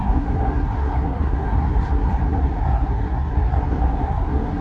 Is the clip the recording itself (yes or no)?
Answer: no